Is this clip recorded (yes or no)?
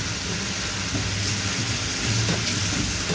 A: yes